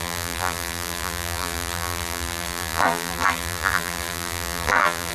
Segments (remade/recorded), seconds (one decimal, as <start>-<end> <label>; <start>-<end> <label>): 0.0-5.1 remade